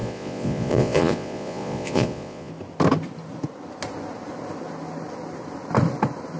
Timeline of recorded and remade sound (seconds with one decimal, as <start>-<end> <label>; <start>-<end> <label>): 0.0-2.5 remade; 2.5-6.4 recorded